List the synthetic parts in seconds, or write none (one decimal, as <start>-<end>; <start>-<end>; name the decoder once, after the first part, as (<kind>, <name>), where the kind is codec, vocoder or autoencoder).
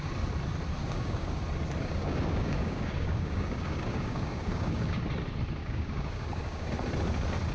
0.8-1.4 (codec, DAC); 1.8-5.0; 5.6-6.7